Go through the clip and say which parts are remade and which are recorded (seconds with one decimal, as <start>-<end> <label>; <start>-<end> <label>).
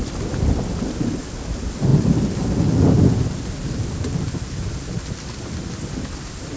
0.0-6.6 recorded